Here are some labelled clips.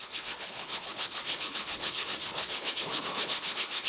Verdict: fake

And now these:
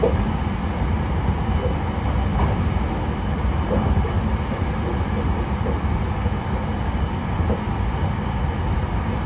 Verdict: real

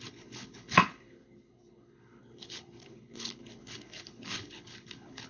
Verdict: fake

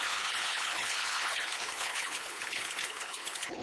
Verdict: fake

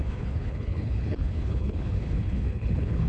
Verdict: fake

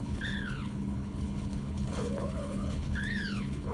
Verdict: fake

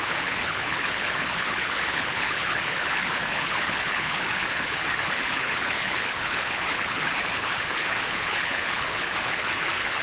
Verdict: fake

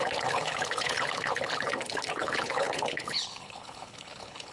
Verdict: fake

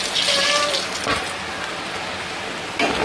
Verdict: real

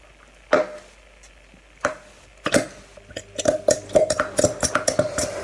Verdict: real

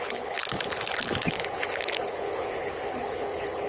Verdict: fake